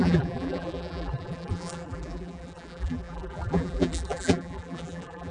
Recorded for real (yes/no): no